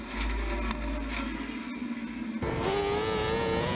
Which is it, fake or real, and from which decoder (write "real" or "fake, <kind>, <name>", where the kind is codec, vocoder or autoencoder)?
real